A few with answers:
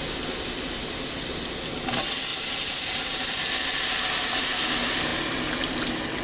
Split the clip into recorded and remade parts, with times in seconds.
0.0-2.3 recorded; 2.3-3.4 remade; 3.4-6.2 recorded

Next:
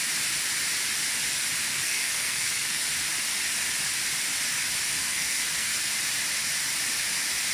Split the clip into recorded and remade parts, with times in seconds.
0.0-1.7 recorded; 1.7-2.8 remade; 2.8-5.0 recorded; 5.0-5.9 remade; 5.9-7.5 recorded

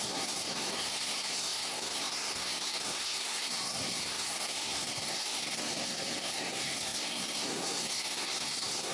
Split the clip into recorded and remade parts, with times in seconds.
0.0-8.9 remade

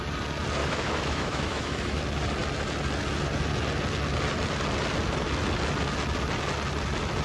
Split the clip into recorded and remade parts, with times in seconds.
0.0-0.6 recorded; 0.6-2.0 remade; 2.0-7.2 recorded